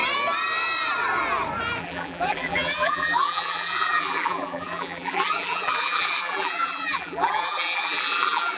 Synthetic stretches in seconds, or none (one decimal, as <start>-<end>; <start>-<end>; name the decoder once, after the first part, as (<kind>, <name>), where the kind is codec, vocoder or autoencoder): 1.8-8.6 (vocoder, BigVGAN v2)